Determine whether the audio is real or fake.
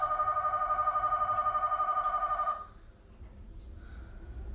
real